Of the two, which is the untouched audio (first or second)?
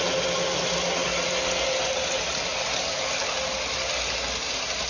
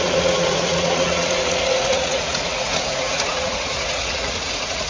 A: first